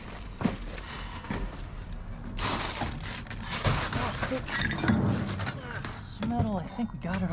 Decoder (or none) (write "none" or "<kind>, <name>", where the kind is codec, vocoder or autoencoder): none